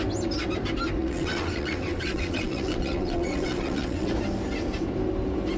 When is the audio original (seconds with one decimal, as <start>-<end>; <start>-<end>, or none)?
0.0-1.0; 4.1-5.6